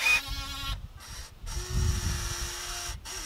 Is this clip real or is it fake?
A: real